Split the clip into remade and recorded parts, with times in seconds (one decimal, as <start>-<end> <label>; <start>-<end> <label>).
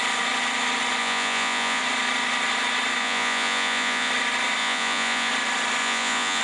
0.0-1.0 recorded; 1.0-1.8 remade; 1.8-3.0 recorded; 3.0-4.1 remade; 4.1-4.6 recorded; 4.6-5.3 remade; 5.3-5.8 recorded; 5.8-6.4 remade